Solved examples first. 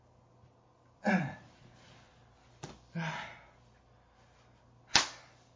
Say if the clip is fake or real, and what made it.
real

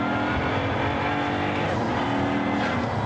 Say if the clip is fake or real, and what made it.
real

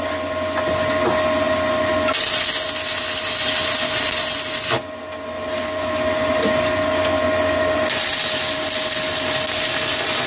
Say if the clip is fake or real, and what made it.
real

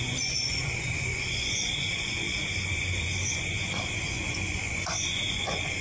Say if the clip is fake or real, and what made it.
fake, vocoder, Vocos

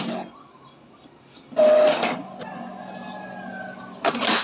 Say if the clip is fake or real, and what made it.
real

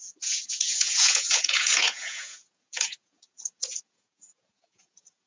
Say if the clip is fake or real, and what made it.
fake, vocoder, Vocos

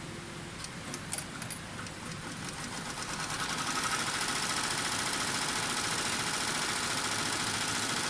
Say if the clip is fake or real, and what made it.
real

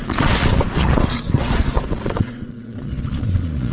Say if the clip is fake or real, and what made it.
fake, vocoder, Vocos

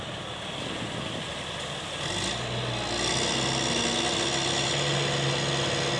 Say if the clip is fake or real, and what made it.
real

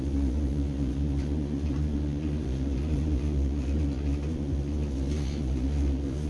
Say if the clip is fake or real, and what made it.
fake, vocoder, Vocos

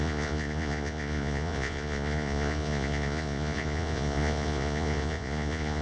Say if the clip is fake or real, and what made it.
fake, vocoder, Vocos